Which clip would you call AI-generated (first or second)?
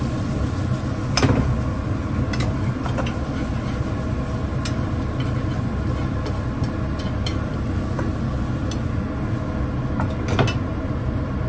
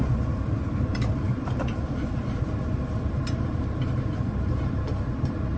second